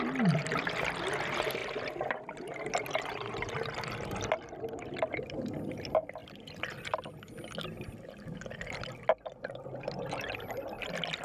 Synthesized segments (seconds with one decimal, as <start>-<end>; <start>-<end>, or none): 1.6-2.6